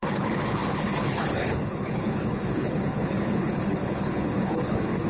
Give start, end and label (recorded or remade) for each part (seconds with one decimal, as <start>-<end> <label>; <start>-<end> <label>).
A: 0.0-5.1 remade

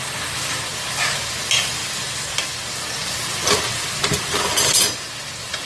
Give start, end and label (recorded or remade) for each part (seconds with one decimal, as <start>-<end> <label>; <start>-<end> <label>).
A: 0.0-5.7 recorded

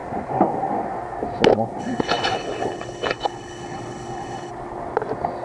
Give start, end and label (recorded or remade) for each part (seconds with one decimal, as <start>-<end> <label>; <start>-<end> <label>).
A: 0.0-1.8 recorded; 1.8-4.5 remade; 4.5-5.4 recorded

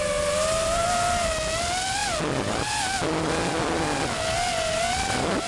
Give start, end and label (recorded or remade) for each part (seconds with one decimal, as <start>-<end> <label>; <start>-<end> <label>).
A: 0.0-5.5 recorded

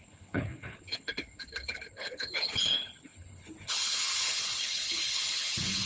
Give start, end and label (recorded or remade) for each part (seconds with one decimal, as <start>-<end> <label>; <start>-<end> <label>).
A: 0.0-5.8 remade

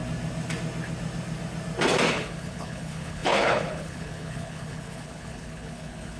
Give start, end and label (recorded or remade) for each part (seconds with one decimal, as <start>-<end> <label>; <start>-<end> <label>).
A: 0.0-2.1 recorded; 2.1-6.2 remade